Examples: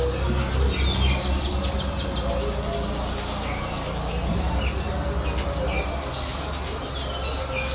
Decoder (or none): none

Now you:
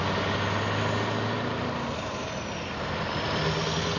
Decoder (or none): none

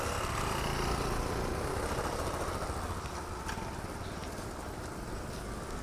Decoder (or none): none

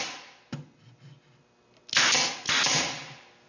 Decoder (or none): none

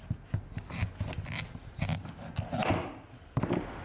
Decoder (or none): none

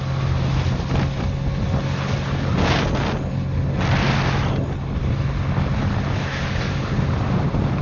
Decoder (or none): none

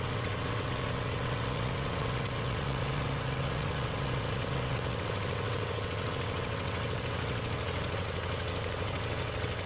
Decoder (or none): vocoder, WaveNeXt